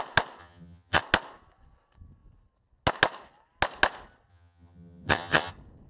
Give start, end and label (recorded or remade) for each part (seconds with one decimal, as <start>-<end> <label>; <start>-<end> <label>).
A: 0.0-0.4 recorded; 0.4-1.0 remade; 1.0-4.3 recorded; 4.3-5.5 remade; 5.5-5.9 recorded